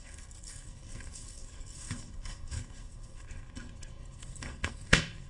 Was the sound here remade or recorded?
remade